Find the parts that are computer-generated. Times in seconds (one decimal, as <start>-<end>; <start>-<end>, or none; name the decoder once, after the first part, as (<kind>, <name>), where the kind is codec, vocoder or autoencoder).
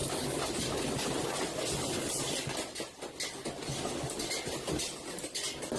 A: none